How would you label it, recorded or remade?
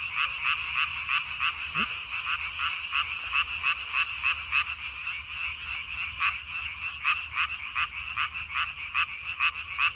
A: recorded